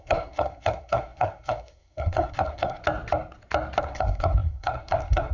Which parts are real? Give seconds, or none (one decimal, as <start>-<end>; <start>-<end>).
2.8-3.8